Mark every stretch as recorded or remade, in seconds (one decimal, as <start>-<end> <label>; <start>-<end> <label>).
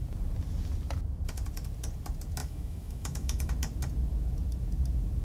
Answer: 0.0-2.4 recorded; 2.4-3.5 remade; 3.5-5.2 recorded